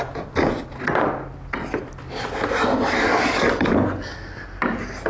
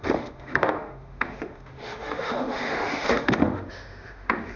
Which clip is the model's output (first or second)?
second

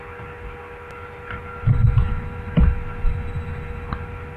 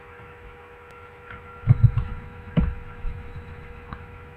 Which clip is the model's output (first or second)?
second